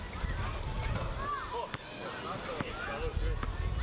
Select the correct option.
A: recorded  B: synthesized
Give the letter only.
A